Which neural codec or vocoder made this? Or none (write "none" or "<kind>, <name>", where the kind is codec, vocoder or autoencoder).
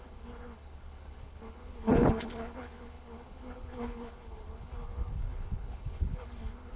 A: codec, HILCodec